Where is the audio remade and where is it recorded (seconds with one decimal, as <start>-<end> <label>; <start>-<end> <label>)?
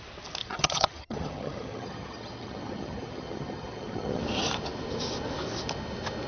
0.0-0.4 recorded; 0.4-4.2 remade; 4.2-6.3 recorded